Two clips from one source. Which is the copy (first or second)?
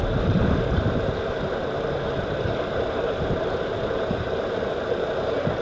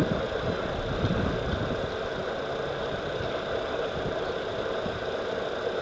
first